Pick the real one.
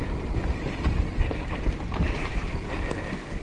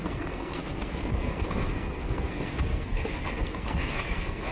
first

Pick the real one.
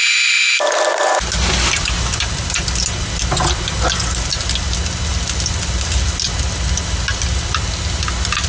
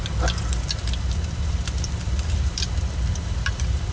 first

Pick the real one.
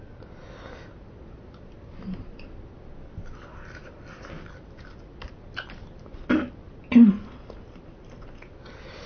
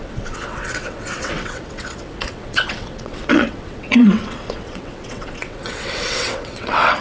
first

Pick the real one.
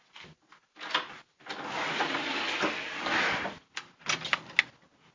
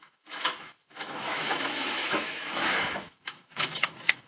first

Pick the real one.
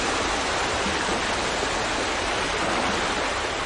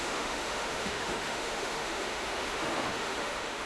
first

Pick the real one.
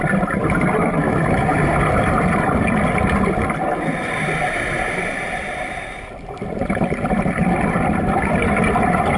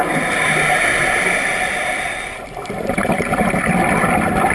second